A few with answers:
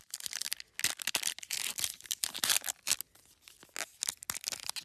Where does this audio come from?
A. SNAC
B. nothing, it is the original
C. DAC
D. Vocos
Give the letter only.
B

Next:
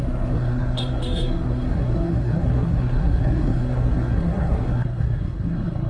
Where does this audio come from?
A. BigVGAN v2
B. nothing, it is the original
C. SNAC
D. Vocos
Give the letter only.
C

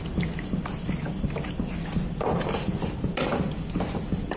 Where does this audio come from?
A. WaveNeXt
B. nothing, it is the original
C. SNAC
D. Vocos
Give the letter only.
B